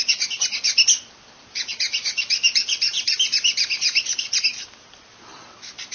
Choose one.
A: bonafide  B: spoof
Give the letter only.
B